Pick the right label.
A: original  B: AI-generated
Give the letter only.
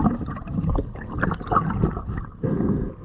A